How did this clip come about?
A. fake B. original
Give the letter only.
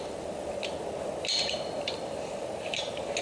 B